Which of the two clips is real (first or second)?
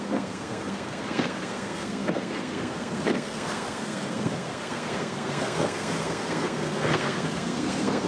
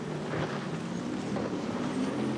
second